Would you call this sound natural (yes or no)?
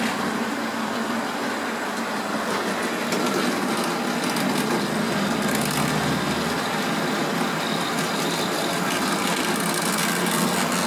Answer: yes